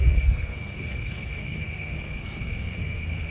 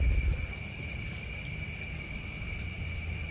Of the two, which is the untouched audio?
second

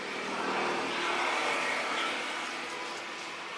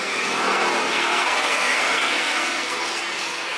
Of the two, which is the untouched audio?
first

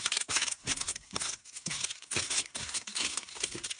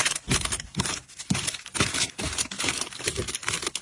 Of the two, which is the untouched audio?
second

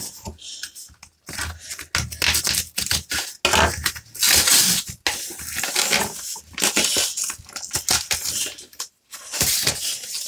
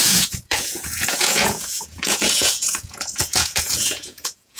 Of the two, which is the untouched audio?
first